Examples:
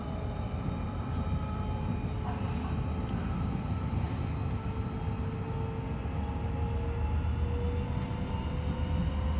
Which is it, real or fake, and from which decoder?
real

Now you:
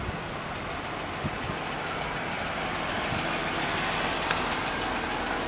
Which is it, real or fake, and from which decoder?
real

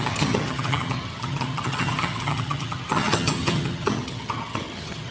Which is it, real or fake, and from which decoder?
fake, vocoder, HiFi-GAN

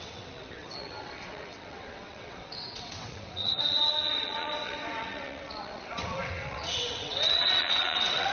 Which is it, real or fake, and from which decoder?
fake, vocoder, WaveNeXt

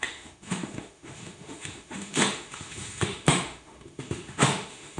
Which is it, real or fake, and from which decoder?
fake, autoencoder, DAC-VAE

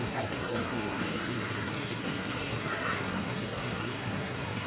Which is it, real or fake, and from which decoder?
fake, codec, SNAC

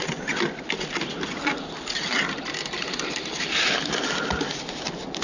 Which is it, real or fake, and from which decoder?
real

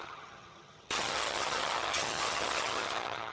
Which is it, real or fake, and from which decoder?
fake, vocoder, HiFi-GAN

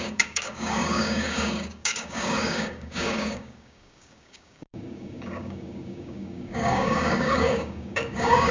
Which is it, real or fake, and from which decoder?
fake, codec, DAC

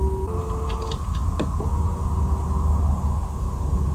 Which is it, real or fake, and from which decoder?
real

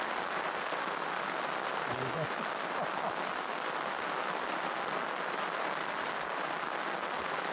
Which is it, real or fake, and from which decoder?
real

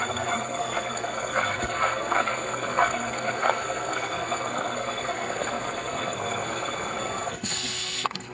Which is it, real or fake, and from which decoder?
fake, codec, SNAC